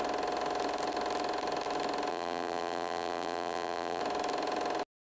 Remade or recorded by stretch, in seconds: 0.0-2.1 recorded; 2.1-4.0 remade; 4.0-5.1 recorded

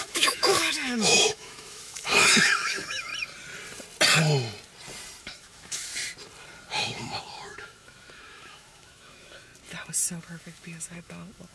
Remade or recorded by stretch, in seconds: 0.0-3.1 remade; 3.1-5.2 recorded; 5.2-5.9 remade; 5.9-6.8 recorded; 6.8-9.5 remade; 9.5-10.2 recorded; 10.2-11.5 remade

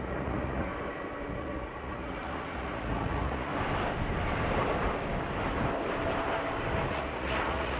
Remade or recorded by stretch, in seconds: 0.0-0.7 remade; 0.7-1.3 recorded; 1.3-3.5 remade; 3.5-6.9 recorded; 6.9-7.8 remade

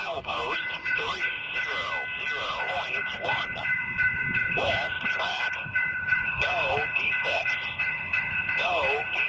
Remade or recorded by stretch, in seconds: 0.0-1.9 remade; 1.9-2.4 recorded; 2.4-9.3 remade

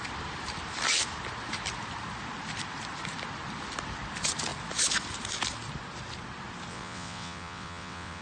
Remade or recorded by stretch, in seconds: 0.0-6.7 recorded; 6.7-8.2 remade

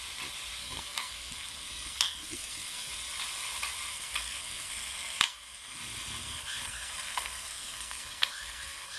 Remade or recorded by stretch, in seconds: 0.0-0.6 recorded; 0.6-2.9 remade; 2.9-3.9 recorded; 3.9-5.8 remade; 5.8-6.2 recorded; 6.2-9.0 remade